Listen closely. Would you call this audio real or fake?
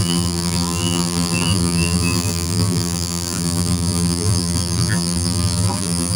fake